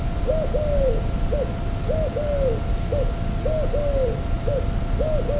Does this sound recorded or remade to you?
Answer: recorded